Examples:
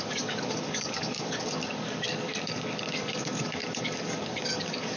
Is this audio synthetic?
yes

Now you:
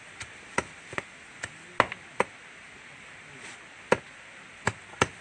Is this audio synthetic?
no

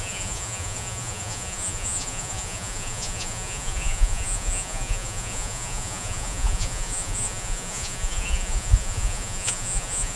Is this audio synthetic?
yes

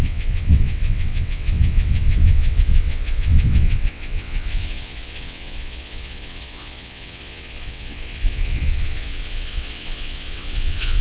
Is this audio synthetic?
yes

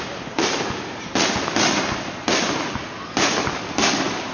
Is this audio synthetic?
no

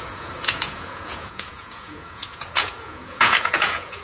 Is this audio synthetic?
yes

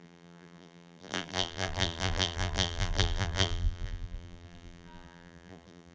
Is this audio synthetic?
yes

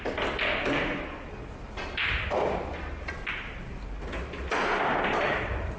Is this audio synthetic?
no